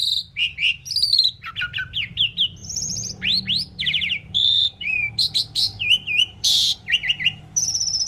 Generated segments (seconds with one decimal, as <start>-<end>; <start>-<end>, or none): 0.6-1.5; 2.6-5.1; 5.7-7.4